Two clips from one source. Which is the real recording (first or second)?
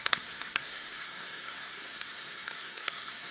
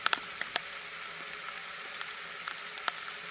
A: second